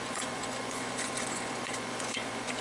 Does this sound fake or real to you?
fake